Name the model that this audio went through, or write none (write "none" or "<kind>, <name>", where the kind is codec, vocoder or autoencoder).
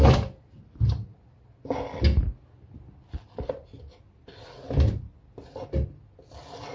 none